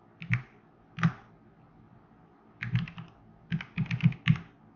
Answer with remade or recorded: recorded